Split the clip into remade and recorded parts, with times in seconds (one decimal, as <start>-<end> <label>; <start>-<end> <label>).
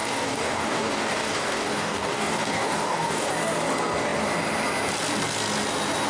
0.0-3.3 remade; 3.3-6.1 recorded